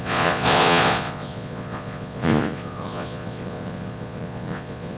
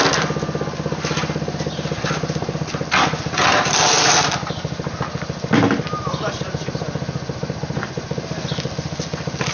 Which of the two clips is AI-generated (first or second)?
first